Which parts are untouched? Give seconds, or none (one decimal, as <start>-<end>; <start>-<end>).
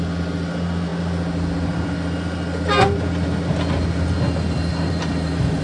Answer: 0.0-4.7